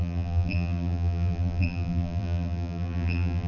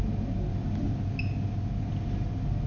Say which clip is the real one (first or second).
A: second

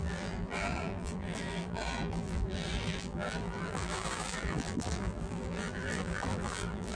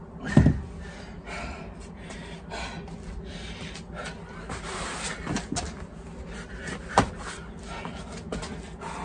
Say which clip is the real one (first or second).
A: second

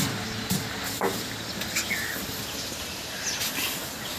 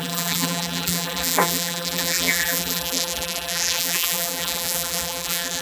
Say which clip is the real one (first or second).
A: first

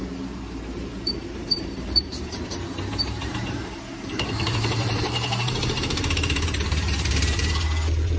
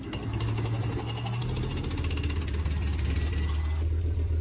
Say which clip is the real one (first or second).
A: second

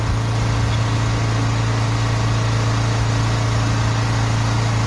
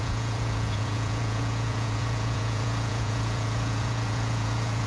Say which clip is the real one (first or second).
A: first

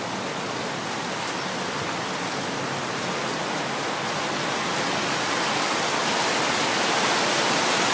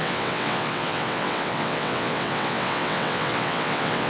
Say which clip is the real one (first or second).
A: first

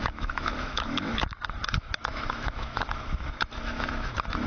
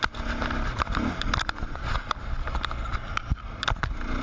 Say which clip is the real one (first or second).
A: second